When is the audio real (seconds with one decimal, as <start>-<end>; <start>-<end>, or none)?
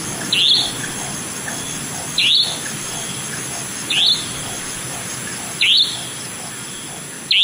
0.0-7.4